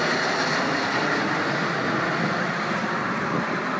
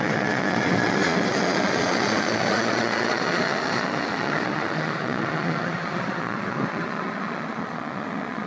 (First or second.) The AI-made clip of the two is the second